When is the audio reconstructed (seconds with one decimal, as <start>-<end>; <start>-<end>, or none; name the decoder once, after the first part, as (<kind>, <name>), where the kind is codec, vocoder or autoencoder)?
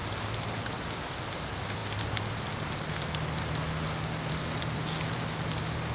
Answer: none